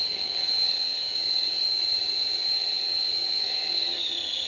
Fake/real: fake